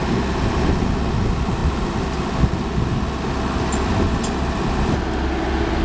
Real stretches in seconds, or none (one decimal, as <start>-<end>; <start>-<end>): 0.0-5.8